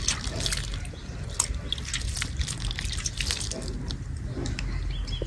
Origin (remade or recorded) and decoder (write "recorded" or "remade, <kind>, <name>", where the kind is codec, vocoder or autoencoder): recorded